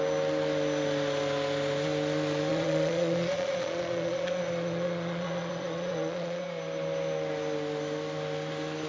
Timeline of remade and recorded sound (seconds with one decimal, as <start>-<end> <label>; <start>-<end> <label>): 0.0-2.5 recorded; 2.5-6.4 remade; 6.4-8.9 recorded